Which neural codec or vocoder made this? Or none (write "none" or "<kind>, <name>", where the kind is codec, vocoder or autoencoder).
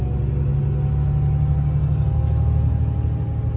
none